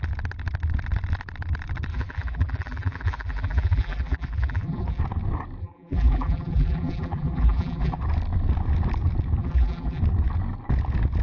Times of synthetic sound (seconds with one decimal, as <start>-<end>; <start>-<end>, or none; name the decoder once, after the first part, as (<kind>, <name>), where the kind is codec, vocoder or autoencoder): 1.9-5.0 (vocoder, BigVGAN v2); 5.6-8.0; 9.4-10.0